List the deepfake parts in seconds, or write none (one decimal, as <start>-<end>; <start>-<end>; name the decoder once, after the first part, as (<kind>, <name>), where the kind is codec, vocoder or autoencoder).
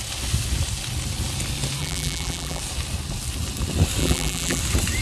1.8-2.6 (vocoder, BigVGAN v2); 4.0-4.6